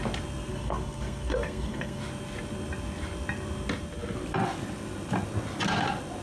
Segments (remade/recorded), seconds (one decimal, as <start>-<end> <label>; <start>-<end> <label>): 0.0-0.5 recorded; 0.5-2.0 remade; 2.0-6.2 recorded